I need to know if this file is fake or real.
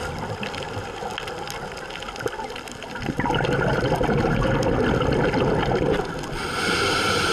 real